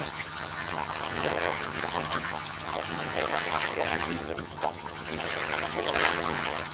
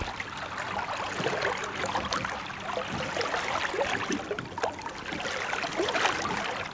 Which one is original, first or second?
second